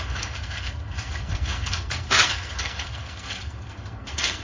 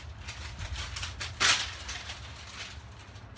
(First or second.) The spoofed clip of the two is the first